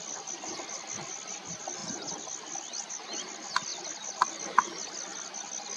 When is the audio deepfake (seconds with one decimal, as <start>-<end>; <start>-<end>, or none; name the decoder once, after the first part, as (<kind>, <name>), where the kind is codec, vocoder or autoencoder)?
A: none